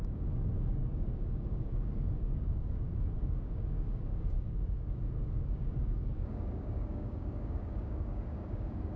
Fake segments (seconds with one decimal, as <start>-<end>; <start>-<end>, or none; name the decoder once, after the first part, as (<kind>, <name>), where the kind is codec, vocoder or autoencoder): 0.0-9.0 (codec, DAC)